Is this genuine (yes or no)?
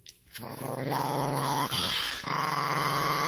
no